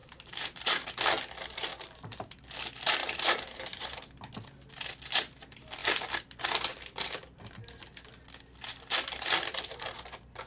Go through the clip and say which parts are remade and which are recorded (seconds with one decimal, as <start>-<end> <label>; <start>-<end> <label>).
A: 0.0-0.6 remade; 0.6-1.7 recorded; 1.7-2.4 remade; 2.4-3.0 recorded; 3.0-4.0 remade; 4.0-10.5 recorded

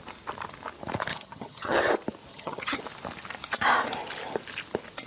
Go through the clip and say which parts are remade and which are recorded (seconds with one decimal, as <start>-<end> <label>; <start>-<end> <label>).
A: 0.0-1.1 recorded; 1.1-1.8 remade; 1.8-2.3 recorded; 2.3-2.8 remade; 2.8-5.1 recorded